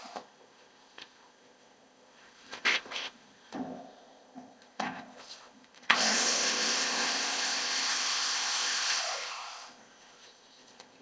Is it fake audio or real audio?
fake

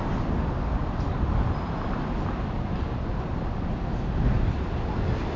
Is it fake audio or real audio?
real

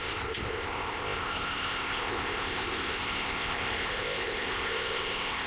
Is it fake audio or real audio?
fake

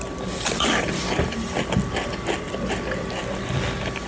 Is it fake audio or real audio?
real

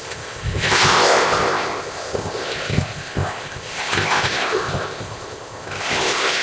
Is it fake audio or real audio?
fake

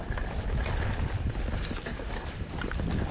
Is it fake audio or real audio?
real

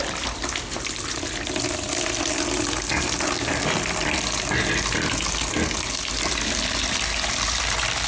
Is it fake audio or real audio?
real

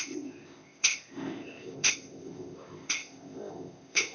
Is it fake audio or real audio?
fake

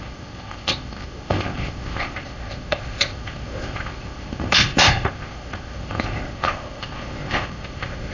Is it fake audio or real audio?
fake